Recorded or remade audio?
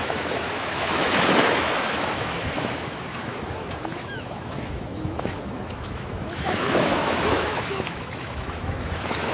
remade